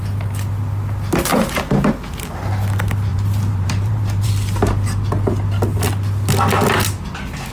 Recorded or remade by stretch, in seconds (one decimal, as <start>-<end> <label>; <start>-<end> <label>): 0.0-1.3 recorded; 1.3-1.9 remade; 1.9-3.1 recorded; 3.1-4.3 remade; 4.3-7.5 recorded